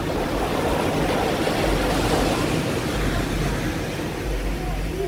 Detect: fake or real real